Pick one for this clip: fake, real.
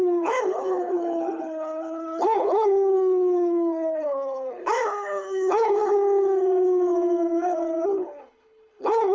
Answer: fake